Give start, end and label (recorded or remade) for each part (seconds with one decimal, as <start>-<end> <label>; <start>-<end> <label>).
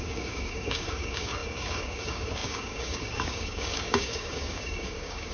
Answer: 0.0-5.3 remade